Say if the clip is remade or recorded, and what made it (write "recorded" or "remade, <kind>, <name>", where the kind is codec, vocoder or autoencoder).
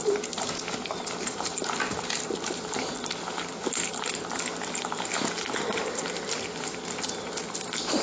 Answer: recorded